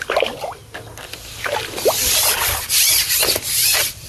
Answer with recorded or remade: recorded